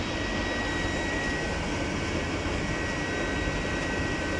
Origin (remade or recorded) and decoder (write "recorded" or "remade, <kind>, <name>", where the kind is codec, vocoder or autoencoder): recorded